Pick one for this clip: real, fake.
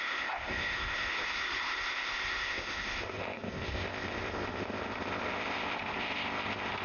fake